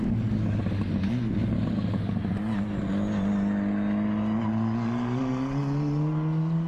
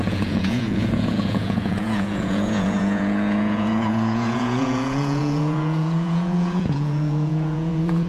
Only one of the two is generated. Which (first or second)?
second